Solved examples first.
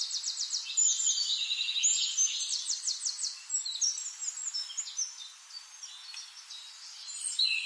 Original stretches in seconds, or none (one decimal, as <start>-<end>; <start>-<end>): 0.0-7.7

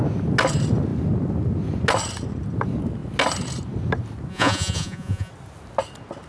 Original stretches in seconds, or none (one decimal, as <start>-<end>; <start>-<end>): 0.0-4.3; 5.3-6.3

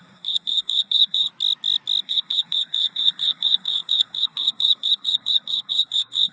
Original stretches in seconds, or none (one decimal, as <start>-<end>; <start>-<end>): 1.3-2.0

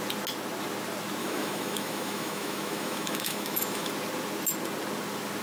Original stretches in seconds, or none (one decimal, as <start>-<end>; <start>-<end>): 0.0-1.2; 3.9-5.4

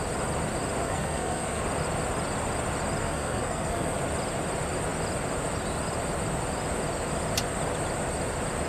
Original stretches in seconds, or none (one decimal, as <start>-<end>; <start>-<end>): 0.0-0.8; 1.6-3.0; 4.0-8.7